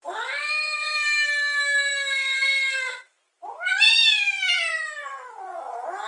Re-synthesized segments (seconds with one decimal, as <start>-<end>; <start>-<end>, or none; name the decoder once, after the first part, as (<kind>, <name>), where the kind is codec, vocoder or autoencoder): 1.9-3.7 (vocoder, BigVGAN v2)